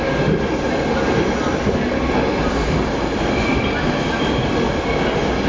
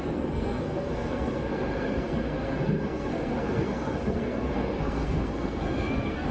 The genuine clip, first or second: first